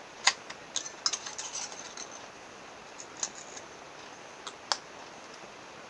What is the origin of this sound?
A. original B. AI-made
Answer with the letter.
A